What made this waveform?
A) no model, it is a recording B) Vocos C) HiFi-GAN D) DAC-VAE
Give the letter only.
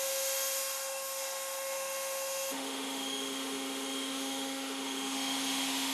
D